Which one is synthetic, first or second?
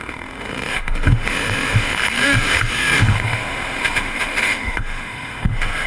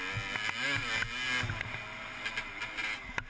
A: first